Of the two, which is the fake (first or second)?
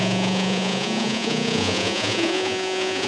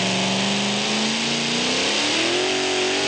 first